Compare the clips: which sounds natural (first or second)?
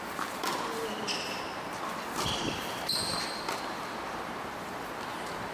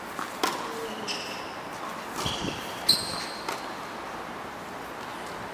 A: second